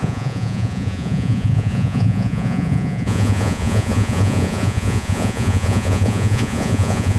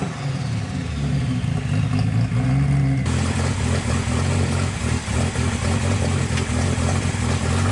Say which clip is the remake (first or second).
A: first